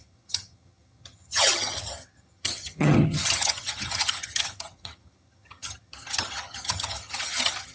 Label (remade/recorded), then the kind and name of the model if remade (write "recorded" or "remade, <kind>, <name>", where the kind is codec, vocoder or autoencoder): remade, vocoder, HiFi-GAN